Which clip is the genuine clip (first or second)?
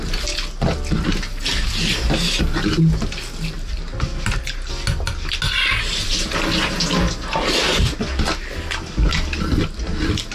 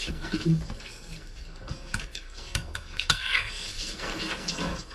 first